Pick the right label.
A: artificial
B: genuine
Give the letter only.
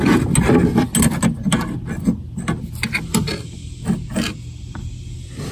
B